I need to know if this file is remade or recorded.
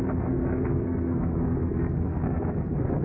remade